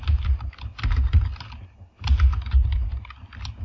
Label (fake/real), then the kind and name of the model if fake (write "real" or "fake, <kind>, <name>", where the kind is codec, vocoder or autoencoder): real